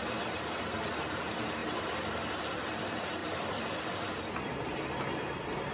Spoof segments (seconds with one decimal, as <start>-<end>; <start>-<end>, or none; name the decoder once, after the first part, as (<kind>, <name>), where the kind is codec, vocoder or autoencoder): 1.6-2.8 (vocoder, BigVGAN v2); 3.2-3.8